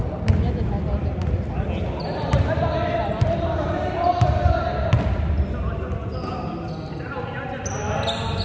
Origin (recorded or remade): recorded